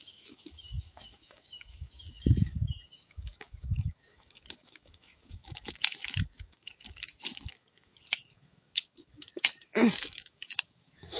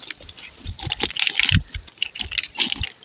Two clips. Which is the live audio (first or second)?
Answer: second